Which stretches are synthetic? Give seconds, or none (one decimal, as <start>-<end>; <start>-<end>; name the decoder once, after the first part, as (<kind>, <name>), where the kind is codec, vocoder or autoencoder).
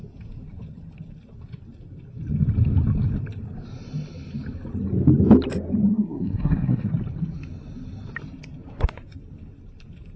5.9-6.9 (codec, SNAC)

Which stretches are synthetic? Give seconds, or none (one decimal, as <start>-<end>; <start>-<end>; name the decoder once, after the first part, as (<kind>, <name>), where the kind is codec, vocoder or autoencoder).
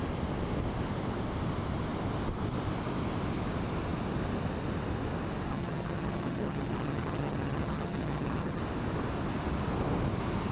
5.5-8.6 (vocoder, HiFi-GAN)